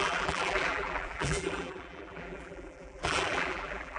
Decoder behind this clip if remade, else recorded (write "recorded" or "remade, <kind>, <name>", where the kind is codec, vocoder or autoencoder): remade, vocoder, BigVGAN v2